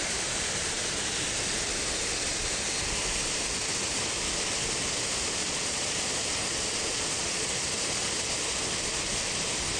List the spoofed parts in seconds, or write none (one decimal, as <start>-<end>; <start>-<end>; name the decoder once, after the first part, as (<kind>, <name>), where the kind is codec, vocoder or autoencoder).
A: 5.4-6.0 (vocoder, Vocos); 6.8-7.5